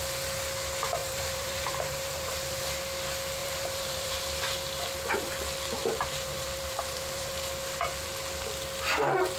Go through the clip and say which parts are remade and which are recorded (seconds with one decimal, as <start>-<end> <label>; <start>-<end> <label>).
0.0-1.0 recorded; 1.0-2.6 remade; 2.6-3.4 recorded; 3.4-4.2 remade; 4.2-5.8 recorded; 5.8-7.3 remade; 7.3-9.4 recorded